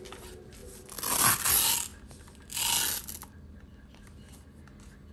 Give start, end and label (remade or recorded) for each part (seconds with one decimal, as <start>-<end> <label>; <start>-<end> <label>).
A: 0.0-5.1 recorded